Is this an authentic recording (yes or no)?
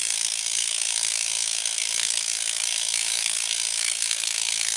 no